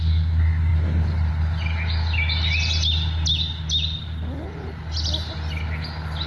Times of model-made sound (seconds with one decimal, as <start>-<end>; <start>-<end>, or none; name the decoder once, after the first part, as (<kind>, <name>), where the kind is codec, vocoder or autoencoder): none